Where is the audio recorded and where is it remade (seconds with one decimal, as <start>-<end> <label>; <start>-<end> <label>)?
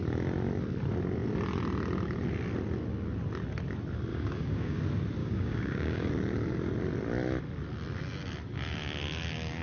0.0-4.1 recorded; 4.1-4.8 remade; 4.8-5.2 recorded; 5.2-6.1 remade; 6.1-9.6 recorded